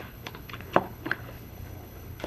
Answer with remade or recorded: remade